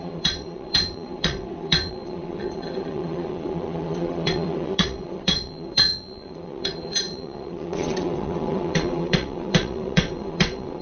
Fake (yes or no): yes